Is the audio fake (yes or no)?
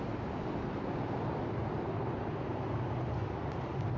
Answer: no